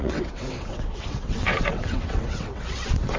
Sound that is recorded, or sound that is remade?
remade